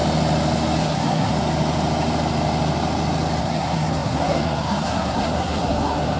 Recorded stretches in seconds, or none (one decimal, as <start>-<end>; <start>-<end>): 0.0-0.8; 1.3-3.4